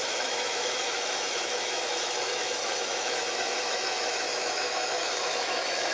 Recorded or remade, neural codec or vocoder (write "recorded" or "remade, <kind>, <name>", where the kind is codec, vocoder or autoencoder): remade, autoencoder, DAC-VAE